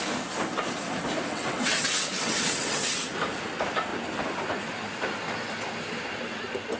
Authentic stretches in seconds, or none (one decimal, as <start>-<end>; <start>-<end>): 0.0-1.3; 3.1-6.8